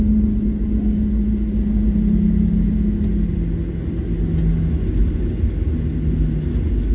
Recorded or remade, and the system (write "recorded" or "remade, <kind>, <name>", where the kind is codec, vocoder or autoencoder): recorded